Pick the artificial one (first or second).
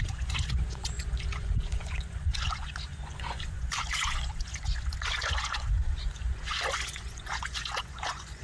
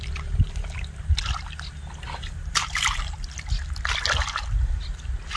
first